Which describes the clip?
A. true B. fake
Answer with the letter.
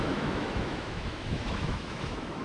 B